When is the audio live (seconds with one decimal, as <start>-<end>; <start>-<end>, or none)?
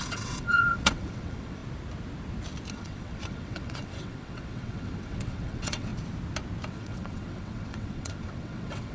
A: 1.6-2.7; 5.9-6.7